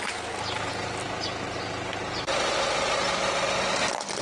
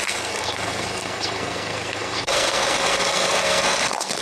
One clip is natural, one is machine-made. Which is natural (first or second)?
first